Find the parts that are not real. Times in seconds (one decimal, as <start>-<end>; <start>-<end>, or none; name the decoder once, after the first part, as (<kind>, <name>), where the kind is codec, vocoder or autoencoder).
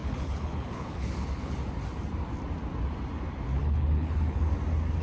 0.0-1.6 (codec, HILCodec); 3.6-4.5